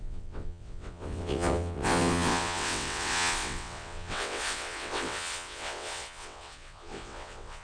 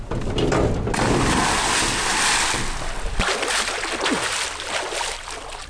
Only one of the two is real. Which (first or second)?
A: second